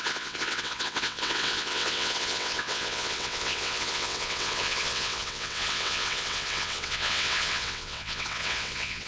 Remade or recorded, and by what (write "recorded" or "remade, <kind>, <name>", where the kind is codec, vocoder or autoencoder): remade, vocoder, WaveNeXt